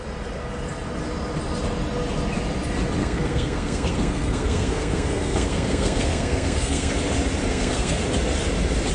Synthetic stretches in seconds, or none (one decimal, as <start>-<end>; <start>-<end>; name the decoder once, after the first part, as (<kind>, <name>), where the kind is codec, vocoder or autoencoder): 3.0-6.9 (codec, SNAC); 7.5-8.0